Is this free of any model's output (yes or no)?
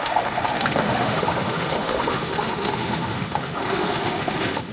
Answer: no